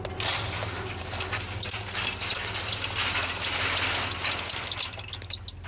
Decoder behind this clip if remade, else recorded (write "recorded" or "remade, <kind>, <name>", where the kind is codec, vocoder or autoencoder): recorded